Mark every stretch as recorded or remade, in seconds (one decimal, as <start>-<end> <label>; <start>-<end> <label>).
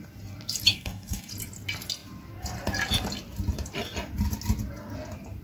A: 0.0-0.7 recorded; 0.7-1.3 remade; 1.3-5.4 recorded